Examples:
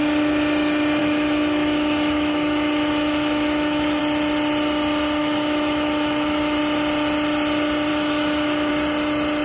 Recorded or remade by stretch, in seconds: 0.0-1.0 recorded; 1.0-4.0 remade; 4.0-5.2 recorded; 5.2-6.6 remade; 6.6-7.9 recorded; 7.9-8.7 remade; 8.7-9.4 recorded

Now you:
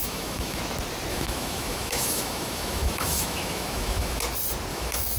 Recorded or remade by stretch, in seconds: 0.0-0.6 remade; 0.6-1.1 recorded; 1.1-4.2 remade; 4.2-4.7 recorded; 4.7-5.2 remade

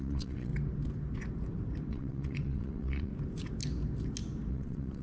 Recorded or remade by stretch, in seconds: 0.0-0.5 remade; 0.5-1.9 recorded; 1.9-3.1 remade; 3.1-4.5 recorded; 4.5-5.0 remade

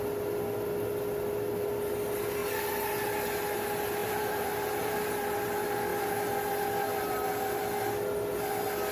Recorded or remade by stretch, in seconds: 0.0-4.0 recorded; 4.0-5.1 remade; 5.1-8.9 recorded

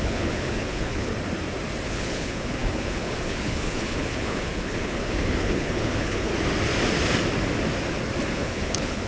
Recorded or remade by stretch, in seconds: 0.0-1.1 remade; 1.1-1.9 recorded; 1.9-6.3 remade; 6.3-8.3 recorded; 8.3-9.1 remade